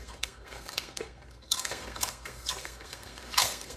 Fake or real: fake